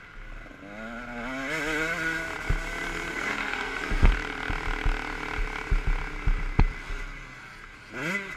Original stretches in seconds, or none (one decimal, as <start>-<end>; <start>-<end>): 0.0-3.1; 4.1-8.4

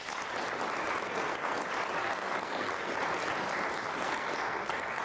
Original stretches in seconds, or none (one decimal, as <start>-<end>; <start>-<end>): 0.0-1.0; 1.6-2.0; 2.9-3.9

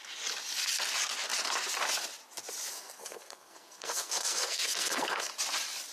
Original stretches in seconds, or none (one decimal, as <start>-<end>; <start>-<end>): 0.0-2.7; 5.3-5.9

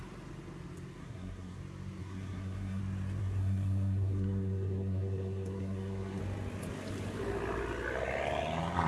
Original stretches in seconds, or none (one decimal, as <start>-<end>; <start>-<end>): 0.0-1.0; 1.6-2.0; 2.8-3.2; 6.2-8.9

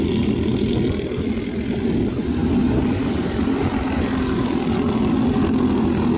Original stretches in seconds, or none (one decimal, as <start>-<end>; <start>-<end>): 0.0-6.2